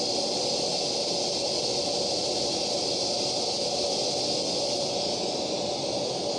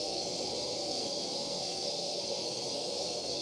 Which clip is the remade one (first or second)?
second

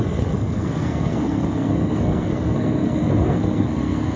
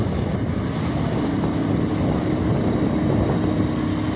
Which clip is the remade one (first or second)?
first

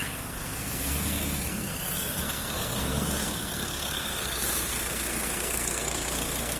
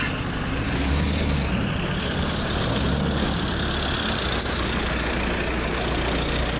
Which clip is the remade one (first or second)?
first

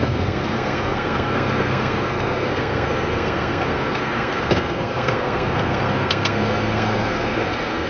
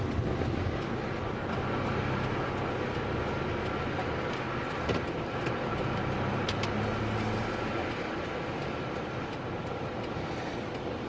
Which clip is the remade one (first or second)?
first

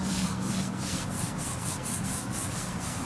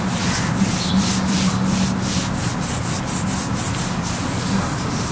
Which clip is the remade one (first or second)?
first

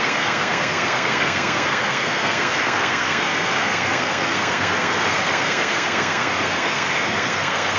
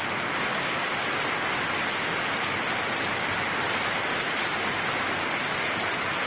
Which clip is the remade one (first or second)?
first